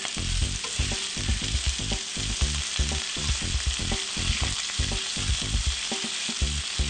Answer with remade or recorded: recorded